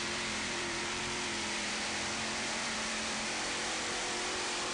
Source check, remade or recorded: remade